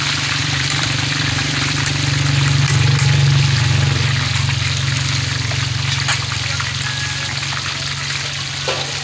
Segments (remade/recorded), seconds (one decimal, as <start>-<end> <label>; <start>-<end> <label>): 0.0-0.4 recorded; 0.4-1.8 remade; 1.8-9.0 recorded